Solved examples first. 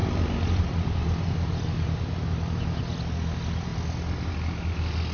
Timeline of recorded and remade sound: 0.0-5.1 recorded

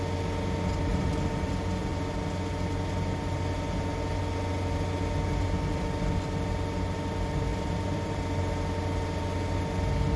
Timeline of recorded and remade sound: 0.0-0.9 recorded; 0.9-1.5 remade; 1.5-7.5 recorded; 7.5-8.2 remade; 8.2-10.2 recorded

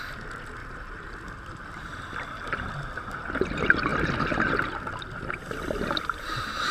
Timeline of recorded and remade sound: 0.0-0.6 recorded; 0.6-2.7 remade; 2.7-3.9 recorded; 3.9-4.5 remade; 4.5-6.7 recorded

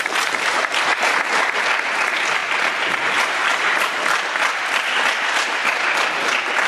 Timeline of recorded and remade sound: 0.0-2.4 remade; 2.4-3.1 recorded; 3.1-3.5 remade; 3.5-6.7 recorded

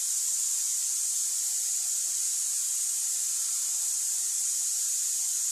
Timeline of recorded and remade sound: 0.0-2.7 recorded; 2.7-4.7 remade; 4.7-5.5 recorded

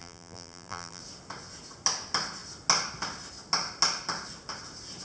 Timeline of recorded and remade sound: 0.0-1.0 remade; 1.0-5.0 recorded

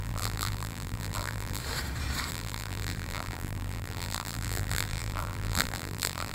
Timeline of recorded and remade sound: 0.0-1.6 remade; 1.6-2.3 recorded; 2.3-6.3 remade